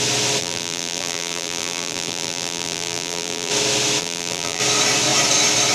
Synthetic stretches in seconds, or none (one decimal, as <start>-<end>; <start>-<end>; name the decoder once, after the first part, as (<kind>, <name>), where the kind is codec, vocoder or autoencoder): 0.4-3.5 (vocoder, BigVGAN v2); 4.0-4.6